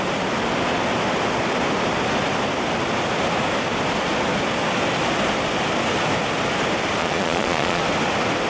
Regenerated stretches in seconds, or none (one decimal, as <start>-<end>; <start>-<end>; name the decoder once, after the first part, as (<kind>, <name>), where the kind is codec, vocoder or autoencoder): 7.0-7.8 (vocoder, Vocos)